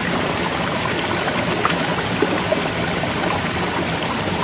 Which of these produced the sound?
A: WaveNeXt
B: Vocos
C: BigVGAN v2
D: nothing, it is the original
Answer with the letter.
D